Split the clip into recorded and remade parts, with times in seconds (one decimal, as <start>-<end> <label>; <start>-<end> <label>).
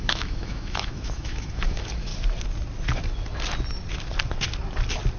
0.0-2.1 remade; 2.1-5.2 recorded